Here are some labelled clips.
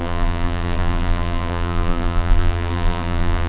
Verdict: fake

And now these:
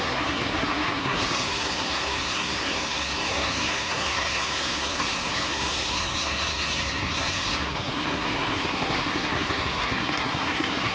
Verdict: fake